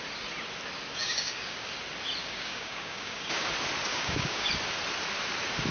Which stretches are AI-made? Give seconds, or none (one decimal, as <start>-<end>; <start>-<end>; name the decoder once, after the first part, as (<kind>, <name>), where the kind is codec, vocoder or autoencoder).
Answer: 1.0-1.7 (codec, DAC); 2.2-3.5; 3.9-4.5